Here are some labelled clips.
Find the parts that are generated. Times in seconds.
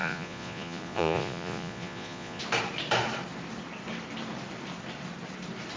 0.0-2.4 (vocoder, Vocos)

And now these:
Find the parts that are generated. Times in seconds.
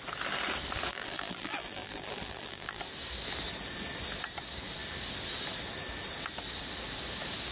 0.9-2.8 (vocoder, BigVGAN v2)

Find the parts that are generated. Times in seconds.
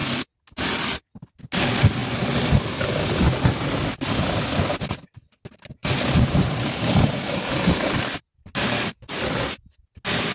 5.8-6.9 (vocoder, BigVGAN v2)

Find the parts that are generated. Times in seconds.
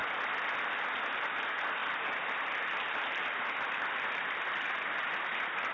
0.0-1.0 (vocoder, BigVGAN v2); 1.8-5.2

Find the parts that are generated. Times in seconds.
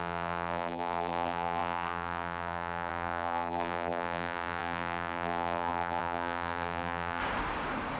0.0-7.2 (vocoder, BigVGAN v2)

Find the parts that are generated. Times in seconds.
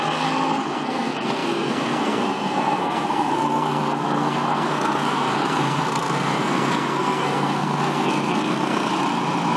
0.0-8.9 (codec, SNAC)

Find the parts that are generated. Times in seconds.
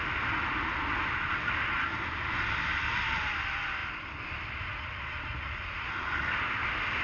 none